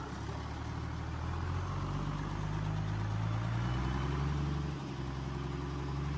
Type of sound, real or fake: real